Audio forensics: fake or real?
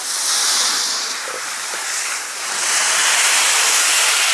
fake